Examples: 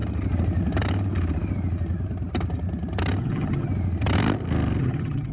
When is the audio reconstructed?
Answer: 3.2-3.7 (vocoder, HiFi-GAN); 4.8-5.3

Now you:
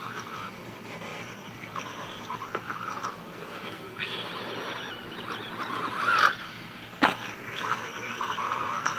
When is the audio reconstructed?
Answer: 0.0-4.3 (codec, SNAC); 6.4-9.0